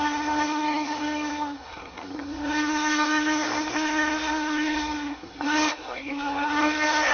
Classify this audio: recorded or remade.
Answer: remade